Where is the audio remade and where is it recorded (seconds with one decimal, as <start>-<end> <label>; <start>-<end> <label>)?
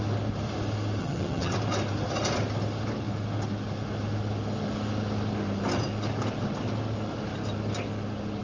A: 0.0-1.0 recorded; 1.0-1.5 remade; 1.5-8.4 recorded